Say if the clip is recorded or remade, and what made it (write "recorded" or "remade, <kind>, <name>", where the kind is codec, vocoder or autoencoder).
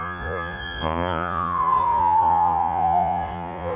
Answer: remade, vocoder, Vocos